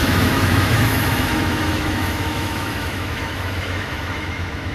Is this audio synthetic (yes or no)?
yes